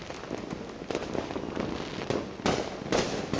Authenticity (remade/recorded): recorded